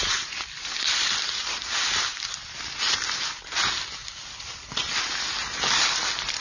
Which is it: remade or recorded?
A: recorded